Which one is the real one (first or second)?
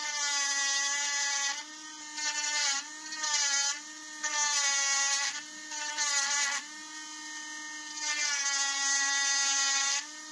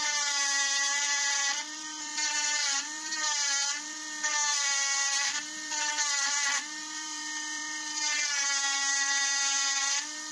first